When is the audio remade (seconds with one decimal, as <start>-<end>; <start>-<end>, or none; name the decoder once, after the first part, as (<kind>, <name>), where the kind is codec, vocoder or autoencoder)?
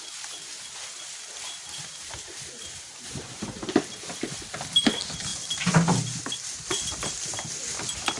0.0-8.2 (vocoder, BigVGAN v2)